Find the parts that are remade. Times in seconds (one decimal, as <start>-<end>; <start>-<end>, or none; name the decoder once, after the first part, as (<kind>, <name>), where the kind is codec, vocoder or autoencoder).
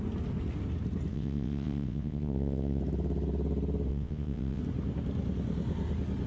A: 1.1-2.8 (vocoder, WaveNeXt); 3.9-4.6